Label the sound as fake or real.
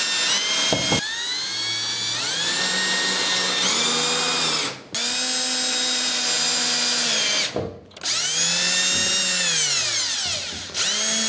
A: real